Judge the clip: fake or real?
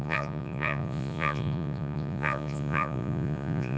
fake